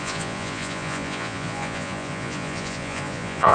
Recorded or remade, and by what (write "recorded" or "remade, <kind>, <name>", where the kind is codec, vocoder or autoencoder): remade, vocoder, Vocos